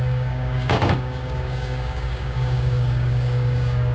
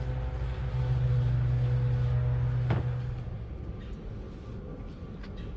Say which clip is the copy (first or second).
first